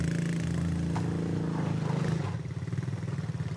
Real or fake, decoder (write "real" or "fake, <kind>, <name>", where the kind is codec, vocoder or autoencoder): real